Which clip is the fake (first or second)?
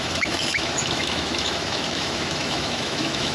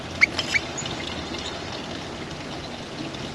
first